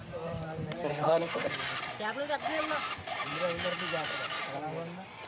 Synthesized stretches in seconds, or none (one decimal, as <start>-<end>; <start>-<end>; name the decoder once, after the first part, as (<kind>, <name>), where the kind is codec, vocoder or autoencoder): 0.9-1.5 (codec, SNAC)